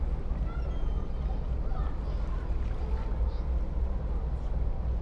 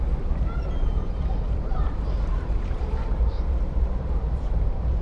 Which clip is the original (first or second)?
first